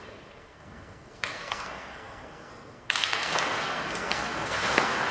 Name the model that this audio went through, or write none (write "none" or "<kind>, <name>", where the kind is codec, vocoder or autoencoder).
codec, SNAC